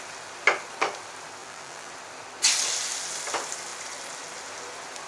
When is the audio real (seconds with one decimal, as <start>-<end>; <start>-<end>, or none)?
0.0-1.4; 1.9-5.1

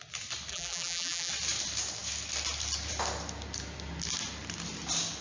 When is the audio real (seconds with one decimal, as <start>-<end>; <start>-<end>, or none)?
0.0-0.5; 1.3-5.2

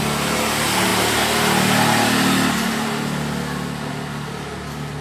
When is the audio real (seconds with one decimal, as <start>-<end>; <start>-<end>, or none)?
0.0-5.0

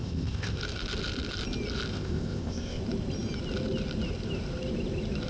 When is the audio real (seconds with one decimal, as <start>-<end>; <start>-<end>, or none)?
0.6-1.9; 2.8-5.3

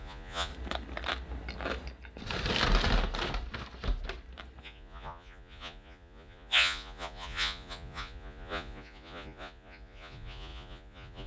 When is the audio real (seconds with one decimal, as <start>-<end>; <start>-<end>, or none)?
0.5-4.6

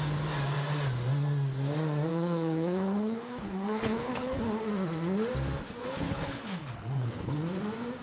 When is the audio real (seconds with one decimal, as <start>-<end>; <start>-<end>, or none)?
0.0-2.1; 4.4-5.8; 7.3-8.0

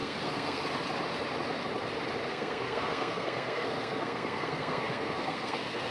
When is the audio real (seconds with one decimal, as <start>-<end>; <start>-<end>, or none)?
0.6-2.3